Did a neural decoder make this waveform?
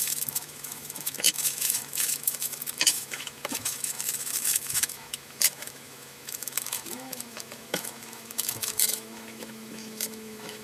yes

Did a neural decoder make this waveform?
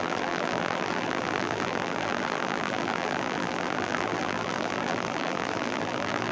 yes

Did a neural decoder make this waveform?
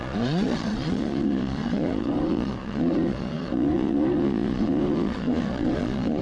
yes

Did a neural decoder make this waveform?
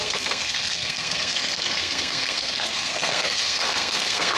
yes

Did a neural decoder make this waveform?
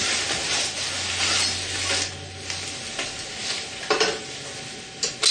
no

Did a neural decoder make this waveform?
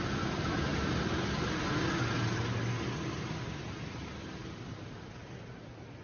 no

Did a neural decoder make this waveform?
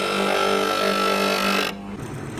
no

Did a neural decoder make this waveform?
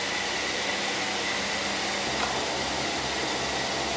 no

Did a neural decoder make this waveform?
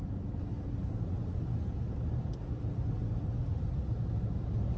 no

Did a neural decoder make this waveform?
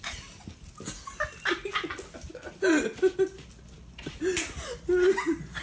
no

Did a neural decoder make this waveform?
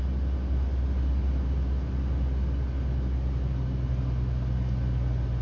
no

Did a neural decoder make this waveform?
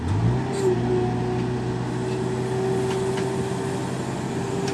no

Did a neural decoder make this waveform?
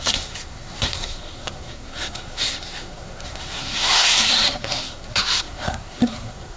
yes